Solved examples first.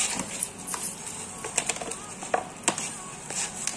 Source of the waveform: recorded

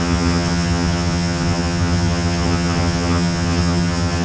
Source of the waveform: remade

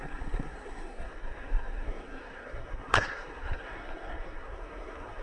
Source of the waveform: remade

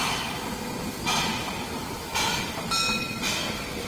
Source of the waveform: recorded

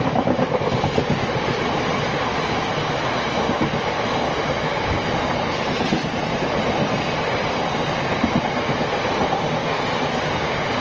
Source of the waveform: recorded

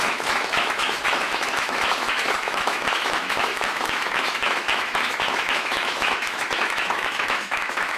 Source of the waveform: remade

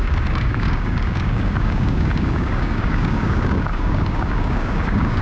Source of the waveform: remade